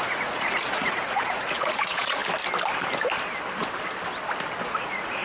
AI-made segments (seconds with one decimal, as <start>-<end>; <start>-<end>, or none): 0.0-2.2; 4.8-5.2